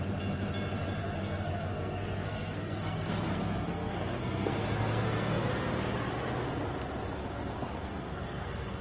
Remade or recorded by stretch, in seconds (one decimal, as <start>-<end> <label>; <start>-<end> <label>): 0.0-1.0 recorded; 1.0-5.5 remade; 5.5-7.2 recorded; 7.2-8.8 remade